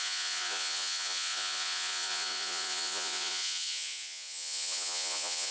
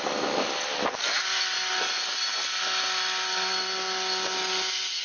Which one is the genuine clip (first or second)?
second